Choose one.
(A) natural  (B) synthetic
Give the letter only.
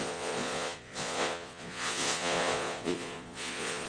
B